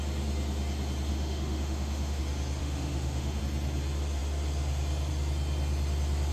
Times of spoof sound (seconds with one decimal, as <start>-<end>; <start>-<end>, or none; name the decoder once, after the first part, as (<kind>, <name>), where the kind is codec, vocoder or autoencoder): 1.1-2.2 (autoencoder, DAC-VAE); 2.6-3.4